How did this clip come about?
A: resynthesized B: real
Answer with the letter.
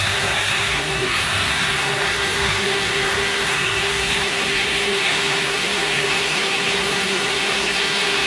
A